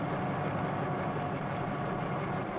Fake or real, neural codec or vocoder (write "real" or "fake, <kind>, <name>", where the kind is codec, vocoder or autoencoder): real